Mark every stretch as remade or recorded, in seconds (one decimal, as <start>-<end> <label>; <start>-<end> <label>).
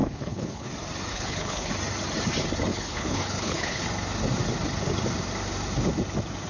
0.0-0.7 remade; 0.7-1.1 recorded; 1.1-1.7 remade; 1.7-2.7 recorded; 2.7-3.8 remade; 3.8-6.5 recorded